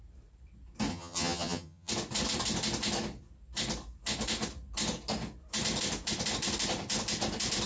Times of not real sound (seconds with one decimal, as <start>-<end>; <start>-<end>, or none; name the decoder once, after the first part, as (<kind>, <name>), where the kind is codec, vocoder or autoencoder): 0.9-1.9 (vocoder, HiFi-GAN)